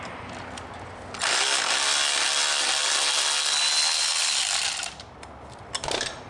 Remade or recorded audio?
recorded